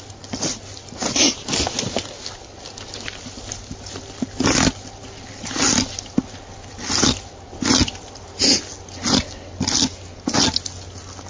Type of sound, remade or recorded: recorded